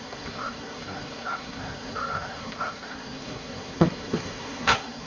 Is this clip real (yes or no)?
no